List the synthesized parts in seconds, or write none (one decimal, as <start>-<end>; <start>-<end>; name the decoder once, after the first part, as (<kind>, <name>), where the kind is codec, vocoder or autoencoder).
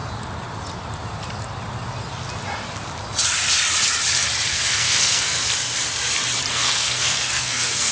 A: 4.5-5.4 (codec, SNAC); 6.5-7.9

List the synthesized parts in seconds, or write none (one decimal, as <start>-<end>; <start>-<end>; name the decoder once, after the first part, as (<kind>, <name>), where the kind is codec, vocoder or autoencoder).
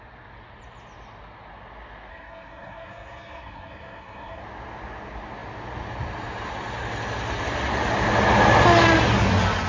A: 2.1-4.4 (codec, SNAC)